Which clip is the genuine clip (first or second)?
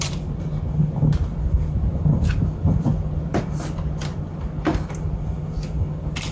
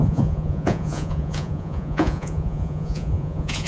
first